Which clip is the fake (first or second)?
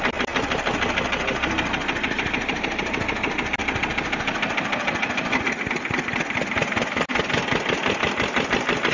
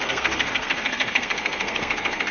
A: second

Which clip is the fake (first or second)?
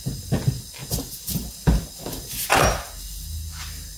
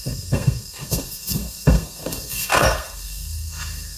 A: second